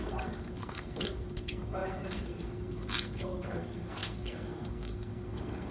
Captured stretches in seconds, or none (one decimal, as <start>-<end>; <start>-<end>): none